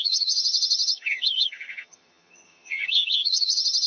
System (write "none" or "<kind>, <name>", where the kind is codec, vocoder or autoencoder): vocoder, HiFi-GAN